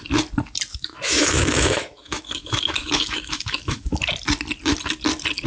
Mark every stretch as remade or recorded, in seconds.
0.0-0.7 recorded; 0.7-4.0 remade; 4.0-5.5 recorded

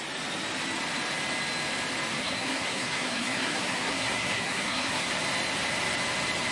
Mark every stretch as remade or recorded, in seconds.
0.0-2.2 recorded; 2.2-5.1 remade; 5.1-6.5 recorded

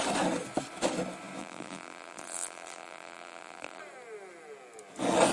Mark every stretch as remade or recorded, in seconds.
0.0-1.4 recorded; 1.4-3.8 remade; 3.8-5.3 recorded

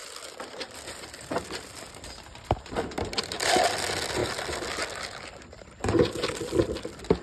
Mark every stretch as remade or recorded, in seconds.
0.0-7.2 recorded